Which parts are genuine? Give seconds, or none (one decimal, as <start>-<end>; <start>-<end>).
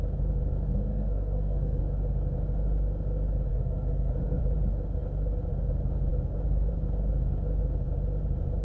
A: 0.0-0.9; 1.8-3.5; 4.4-8.6